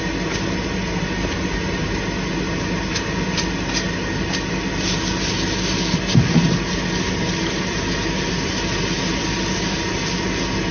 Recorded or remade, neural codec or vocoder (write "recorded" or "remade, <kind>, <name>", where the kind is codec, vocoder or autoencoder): recorded